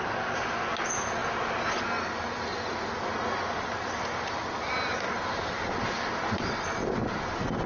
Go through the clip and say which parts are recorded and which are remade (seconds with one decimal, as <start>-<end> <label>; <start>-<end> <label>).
0.0-7.7 recorded